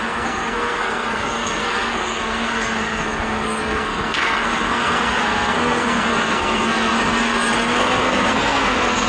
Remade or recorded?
remade